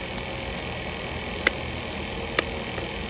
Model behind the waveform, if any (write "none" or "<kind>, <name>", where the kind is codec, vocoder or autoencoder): none